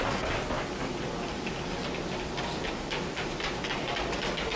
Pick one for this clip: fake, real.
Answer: real